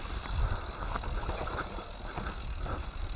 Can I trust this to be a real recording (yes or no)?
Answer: yes